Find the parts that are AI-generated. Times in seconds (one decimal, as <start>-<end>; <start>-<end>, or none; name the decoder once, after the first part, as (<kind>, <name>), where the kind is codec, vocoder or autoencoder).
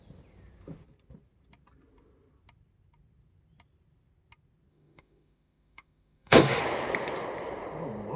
4.7-6.6 (autoencoder, DAC-VAE)